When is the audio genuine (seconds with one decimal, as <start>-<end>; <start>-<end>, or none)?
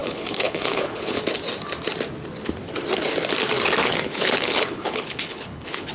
1.2-3.8